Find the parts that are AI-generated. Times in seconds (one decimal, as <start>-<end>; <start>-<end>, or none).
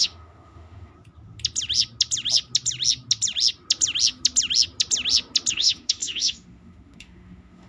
0.0-0.9; 5.5-7.7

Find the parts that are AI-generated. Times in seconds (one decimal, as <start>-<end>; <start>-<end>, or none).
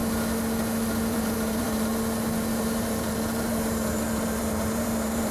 1.1-1.9; 2.5-5.3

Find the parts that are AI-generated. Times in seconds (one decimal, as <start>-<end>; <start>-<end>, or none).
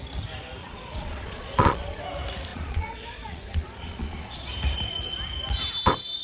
0.6-2.0; 2.5-4.5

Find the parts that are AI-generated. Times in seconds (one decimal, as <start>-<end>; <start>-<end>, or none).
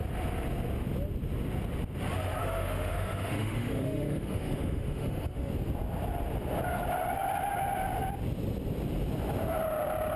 2.4-5.5